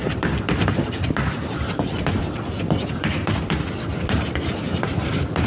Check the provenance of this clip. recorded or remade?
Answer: remade